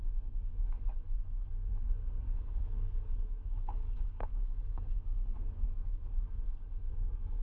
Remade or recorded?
remade